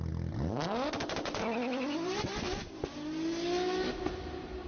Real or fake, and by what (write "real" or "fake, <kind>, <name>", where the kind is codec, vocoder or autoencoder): real